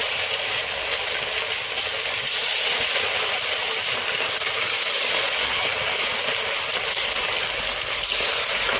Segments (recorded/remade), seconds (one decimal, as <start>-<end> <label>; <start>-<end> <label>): 0.0-8.8 recorded